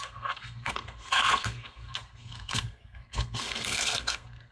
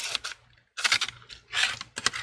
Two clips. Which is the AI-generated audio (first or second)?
first